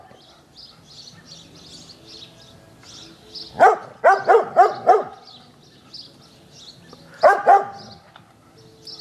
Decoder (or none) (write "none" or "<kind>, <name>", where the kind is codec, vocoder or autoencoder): none